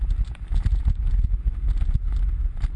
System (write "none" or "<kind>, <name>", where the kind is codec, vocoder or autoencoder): none